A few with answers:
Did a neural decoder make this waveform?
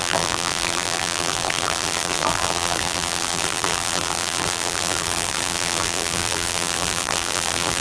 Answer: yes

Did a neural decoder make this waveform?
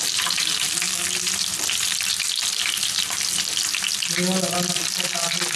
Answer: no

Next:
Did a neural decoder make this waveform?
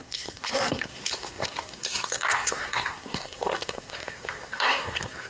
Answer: yes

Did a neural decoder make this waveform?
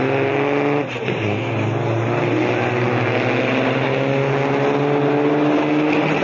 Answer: no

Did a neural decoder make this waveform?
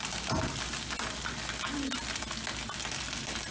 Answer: no